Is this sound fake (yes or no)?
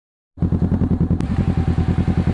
no